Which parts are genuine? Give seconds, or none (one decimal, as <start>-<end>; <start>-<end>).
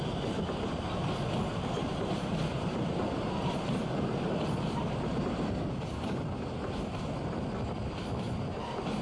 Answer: 0.0-1.5; 3.0-9.0